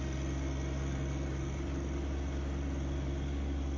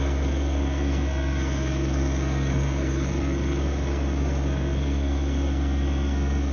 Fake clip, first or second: second